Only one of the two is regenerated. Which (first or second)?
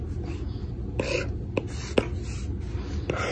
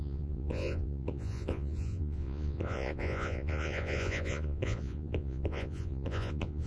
second